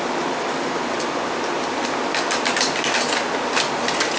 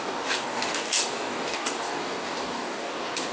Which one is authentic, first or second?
first